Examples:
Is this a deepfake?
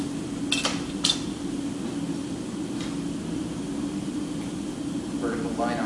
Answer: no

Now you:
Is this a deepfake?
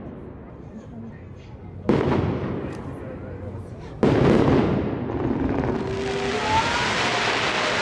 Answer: no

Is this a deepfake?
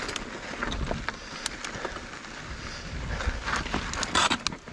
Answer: no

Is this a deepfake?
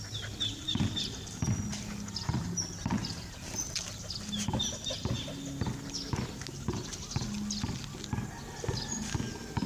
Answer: no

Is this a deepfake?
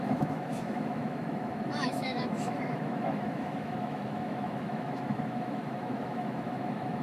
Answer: yes